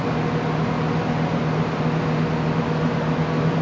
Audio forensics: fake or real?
real